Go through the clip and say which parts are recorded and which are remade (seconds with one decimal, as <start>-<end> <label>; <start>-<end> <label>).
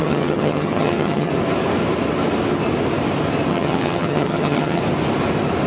0.0-1.3 remade; 1.3-3.5 recorded; 3.5-4.8 remade; 4.8-5.7 recorded